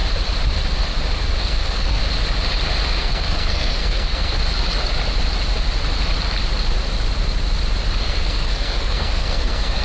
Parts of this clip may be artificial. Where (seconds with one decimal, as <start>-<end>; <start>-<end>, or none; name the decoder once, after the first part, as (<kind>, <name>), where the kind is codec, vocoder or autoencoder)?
1.4-2.0 (codec, SNAC); 3.0-4.4; 8.0-9.8

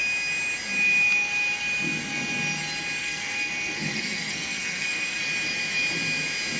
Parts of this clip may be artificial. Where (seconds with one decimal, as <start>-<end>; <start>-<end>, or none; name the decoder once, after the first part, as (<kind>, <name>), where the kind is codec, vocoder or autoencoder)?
3.0-5.2 (codec, SNAC)